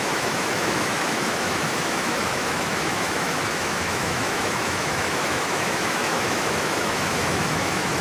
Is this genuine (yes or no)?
no